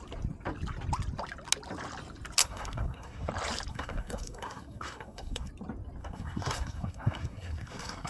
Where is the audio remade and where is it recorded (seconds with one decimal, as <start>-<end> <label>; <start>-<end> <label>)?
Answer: 0.0-2.4 recorded; 2.4-3.3 remade; 3.3-3.7 recorded; 3.7-5.5 remade; 5.5-6.0 recorded; 6.0-8.1 remade